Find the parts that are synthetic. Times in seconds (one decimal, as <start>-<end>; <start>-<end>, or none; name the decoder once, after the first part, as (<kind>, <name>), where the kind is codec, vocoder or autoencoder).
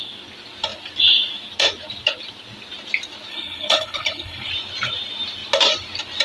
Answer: 3.3-4.5 (codec, HILCodec)